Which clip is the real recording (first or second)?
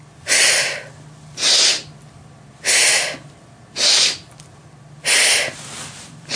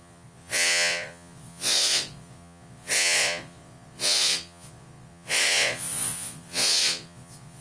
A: first